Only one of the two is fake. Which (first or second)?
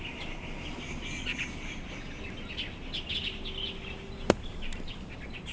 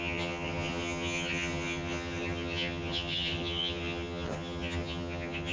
second